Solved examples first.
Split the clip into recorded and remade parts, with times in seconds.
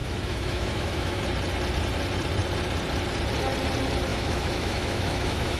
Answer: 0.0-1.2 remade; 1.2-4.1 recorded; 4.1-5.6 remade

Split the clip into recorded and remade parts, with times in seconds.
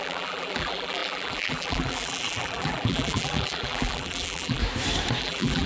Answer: 0.0-4.6 remade; 4.6-5.2 recorded; 5.2-5.7 remade